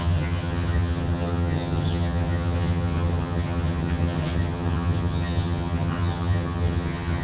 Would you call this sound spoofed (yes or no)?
yes